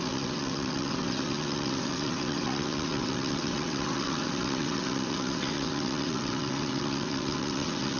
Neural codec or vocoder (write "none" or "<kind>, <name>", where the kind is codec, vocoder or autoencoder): vocoder, WaveNeXt